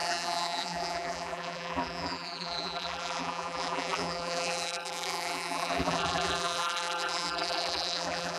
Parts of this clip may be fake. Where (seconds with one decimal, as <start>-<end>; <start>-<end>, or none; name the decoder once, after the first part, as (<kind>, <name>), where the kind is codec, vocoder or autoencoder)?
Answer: 0.0-8.4 (vocoder, BigVGAN v2)